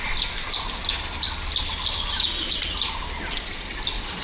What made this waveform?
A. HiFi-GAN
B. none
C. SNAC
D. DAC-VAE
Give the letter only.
B